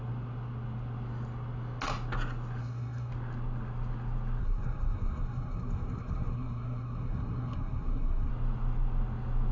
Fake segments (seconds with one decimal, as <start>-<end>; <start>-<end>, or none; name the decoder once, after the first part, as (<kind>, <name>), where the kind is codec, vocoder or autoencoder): 2.6-3.1 (codec, SNAC); 4.4-8.3